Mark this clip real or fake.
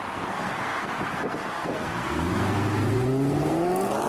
fake